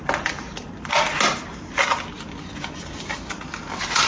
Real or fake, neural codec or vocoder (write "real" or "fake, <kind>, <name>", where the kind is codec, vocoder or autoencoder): real